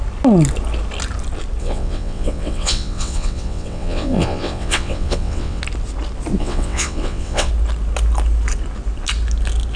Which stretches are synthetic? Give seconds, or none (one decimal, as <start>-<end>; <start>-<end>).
1.6-5.6; 6.4-7.5